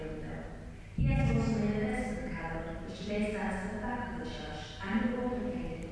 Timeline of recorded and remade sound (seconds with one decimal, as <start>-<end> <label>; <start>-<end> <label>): 0.0-1.9 recorded; 1.9-3.1 remade; 3.1-4.1 recorded; 4.1-4.9 remade; 4.9-5.9 recorded